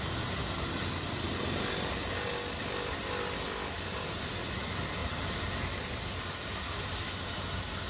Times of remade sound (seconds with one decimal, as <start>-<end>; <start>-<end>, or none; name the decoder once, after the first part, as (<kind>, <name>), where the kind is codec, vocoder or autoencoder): 5.0-6.2 (vocoder, BigVGAN v2)

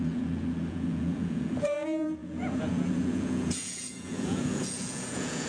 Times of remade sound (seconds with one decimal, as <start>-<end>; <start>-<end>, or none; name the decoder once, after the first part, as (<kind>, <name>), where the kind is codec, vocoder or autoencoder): 0.0-5.5 (vocoder, Vocos)

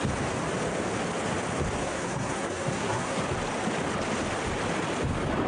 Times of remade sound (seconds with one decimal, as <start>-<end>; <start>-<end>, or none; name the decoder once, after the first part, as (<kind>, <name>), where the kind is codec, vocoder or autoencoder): 1.8-3.2 (codec, SNAC)

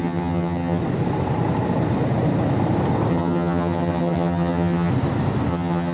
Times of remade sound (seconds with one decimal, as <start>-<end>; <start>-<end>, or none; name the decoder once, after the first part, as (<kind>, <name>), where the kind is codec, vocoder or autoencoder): 0.0-0.8 (vocoder, HiFi-GAN); 3.1-4.9; 5.5-5.9

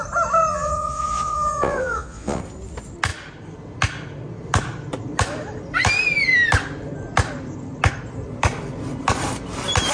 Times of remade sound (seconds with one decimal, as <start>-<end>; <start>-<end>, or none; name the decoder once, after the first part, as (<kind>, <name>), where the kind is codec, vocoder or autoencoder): 0.5-2.4 (vocoder, Vocos)

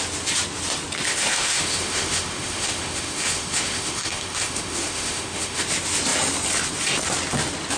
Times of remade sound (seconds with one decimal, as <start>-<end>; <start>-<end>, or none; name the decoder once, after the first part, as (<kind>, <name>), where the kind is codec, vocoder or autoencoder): 1.1-5.6 (autoencoder, DAC-VAE)